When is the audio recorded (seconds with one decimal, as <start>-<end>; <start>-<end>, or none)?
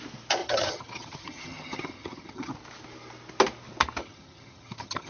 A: 0.0-0.4; 2.5-4.0